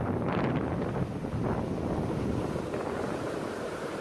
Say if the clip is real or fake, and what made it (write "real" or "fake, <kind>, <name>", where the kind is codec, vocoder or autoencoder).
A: real